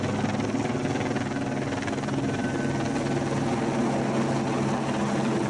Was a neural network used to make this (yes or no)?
no